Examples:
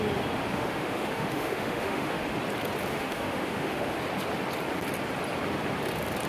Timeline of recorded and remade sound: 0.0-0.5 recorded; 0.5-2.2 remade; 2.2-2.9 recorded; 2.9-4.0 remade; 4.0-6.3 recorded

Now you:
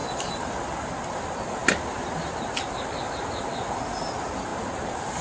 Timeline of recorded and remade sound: 0.0-5.2 recorded

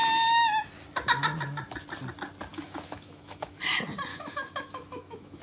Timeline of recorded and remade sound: 0.0-2.5 recorded; 2.5-3.6 remade; 3.6-4.1 recorded; 4.1-5.4 remade

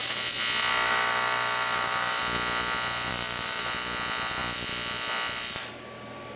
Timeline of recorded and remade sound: 0.0-0.7 recorded; 0.7-2.2 remade; 2.2-3.1 recorded; 3.1-3.6 remade; 3.6-6.4 recorded

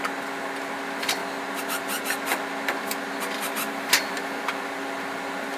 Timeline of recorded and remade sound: 0.0-5.6 recorded

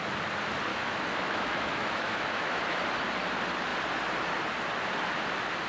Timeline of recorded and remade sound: 0.0-0.7 recorded; 0.7-2.8 remade; 2.8-5.7 recorded

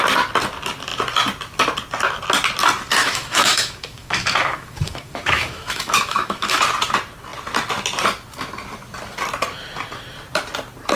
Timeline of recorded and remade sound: 0.0-3.0 recorded; 3.0-6.6 remade; 6.6-11.0 recorded